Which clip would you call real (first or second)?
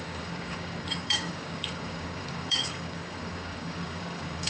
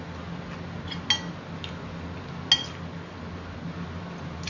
second